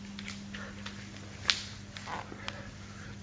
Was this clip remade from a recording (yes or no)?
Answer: no